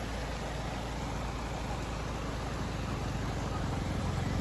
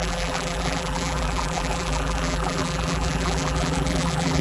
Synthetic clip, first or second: second